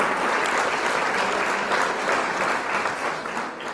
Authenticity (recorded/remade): recorded